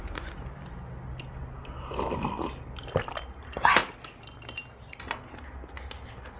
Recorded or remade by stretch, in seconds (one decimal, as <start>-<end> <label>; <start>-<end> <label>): 0.0-6.4 recorded